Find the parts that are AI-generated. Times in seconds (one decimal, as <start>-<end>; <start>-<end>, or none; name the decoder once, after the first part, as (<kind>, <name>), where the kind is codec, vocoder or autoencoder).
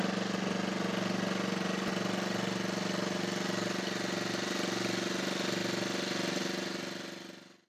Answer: none